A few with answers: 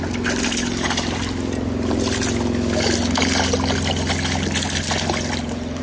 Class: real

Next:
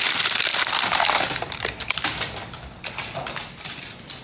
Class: real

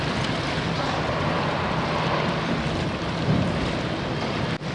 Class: real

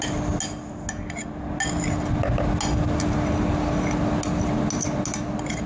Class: real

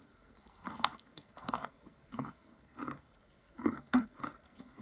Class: fake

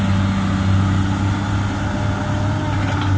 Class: real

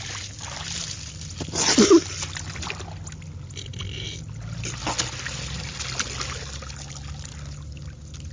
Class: real